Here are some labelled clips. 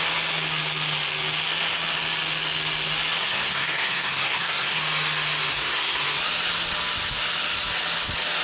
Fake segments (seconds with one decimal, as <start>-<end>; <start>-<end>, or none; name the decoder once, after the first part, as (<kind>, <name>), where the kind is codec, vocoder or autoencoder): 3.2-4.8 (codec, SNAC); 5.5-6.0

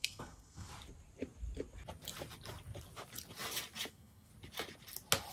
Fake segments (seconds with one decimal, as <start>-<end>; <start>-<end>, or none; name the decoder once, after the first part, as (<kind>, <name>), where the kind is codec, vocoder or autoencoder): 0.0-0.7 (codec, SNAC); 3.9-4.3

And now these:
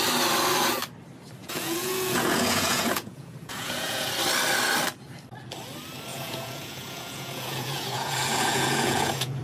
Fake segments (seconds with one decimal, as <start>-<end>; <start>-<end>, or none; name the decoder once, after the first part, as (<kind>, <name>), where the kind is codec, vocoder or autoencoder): 1.4-4.1 (vocoder, Vocos); 6.1-9.4

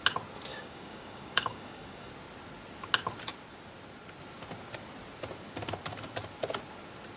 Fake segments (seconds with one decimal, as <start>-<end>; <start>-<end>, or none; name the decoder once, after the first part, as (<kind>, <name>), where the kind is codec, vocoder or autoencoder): 0.5-2.1 (codec, DAC)